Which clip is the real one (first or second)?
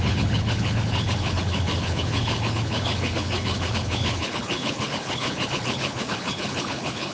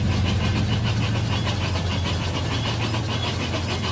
second